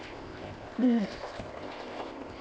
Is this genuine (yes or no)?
no